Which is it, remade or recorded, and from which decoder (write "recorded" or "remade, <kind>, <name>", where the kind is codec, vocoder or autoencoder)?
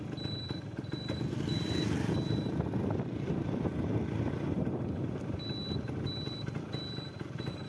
recorded